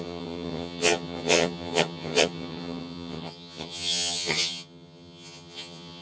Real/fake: fake